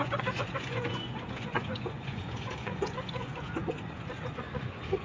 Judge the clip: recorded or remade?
remade